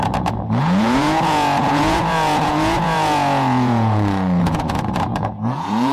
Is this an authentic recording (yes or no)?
no